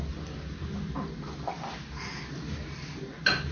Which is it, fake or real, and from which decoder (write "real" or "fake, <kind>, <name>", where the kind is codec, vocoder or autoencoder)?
real